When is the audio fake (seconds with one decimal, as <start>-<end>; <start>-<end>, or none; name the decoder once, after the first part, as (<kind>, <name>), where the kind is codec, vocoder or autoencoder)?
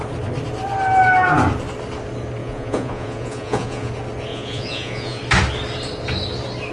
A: 2.4-3.9 (vocoder, Vocos); 4.3-5.2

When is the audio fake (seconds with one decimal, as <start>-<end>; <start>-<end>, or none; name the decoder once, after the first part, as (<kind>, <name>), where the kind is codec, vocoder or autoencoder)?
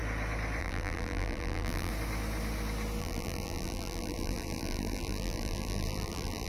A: 0.6-1.9 (vocoder, BigVGAN v2); 3.0-6.5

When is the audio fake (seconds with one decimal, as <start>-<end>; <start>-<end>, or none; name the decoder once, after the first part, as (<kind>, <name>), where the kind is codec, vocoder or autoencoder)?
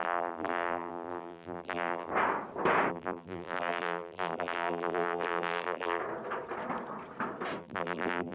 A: 0.0-2.1 (vocoder, BigVGAN v2); 2.9-6.0; 7.6-8.3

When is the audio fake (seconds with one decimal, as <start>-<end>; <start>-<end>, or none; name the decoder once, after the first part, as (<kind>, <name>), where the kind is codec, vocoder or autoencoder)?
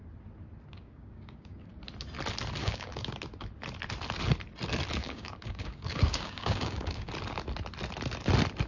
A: 0.7-1.7 (codec, DAC); 2.6-3.1; 5.0-7.1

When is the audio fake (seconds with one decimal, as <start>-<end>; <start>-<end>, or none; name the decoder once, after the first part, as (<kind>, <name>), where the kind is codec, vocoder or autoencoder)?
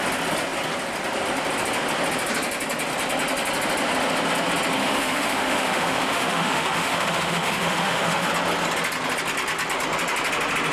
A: 4.8-8.3 (autoencoder, DAC-VAE)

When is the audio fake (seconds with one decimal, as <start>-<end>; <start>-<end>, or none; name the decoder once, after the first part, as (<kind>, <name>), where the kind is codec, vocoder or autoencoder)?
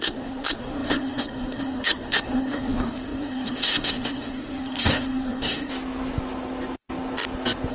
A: 0.0-5.7 (codec, SNAC)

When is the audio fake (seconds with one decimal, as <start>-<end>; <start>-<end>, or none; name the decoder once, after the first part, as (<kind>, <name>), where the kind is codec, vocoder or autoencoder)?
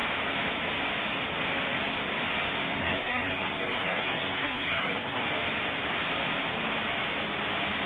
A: 2.8-5.2 (codec, SNAC)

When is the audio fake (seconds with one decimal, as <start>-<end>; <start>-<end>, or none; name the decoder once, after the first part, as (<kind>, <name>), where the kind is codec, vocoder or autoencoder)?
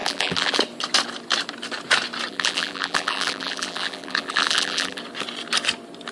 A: 0.0-0.6 (vocoder, BigVGAN v2); 2.3-5.0